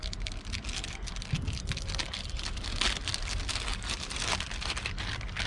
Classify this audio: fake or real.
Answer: real